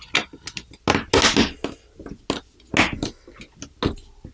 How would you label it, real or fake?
real